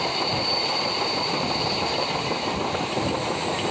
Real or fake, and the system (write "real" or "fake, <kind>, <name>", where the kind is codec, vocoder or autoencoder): fake, vocoder, BigVGAN v2